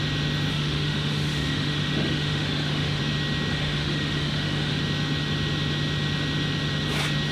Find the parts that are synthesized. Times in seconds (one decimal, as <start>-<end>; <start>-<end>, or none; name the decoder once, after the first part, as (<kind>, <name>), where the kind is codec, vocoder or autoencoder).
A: 0.5-3.0 (autoencoder, DAC-VAE); 3.5-4.8